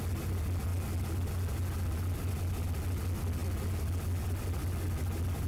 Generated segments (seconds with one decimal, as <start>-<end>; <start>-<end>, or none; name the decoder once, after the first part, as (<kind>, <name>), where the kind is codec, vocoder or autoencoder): none